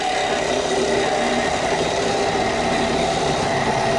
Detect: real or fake real